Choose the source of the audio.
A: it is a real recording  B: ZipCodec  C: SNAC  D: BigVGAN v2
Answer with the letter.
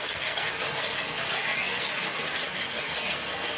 C